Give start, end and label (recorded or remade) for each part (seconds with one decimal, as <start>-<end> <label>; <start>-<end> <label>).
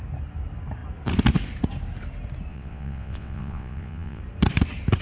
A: 0.0-2.5 recorded; 2.5-4.2 remade; 4.2-5.0 recorded